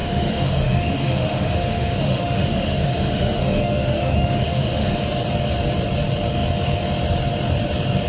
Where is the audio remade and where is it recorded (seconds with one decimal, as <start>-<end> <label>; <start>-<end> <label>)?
0.0-4.9 remade; 4.9-8.1 recorded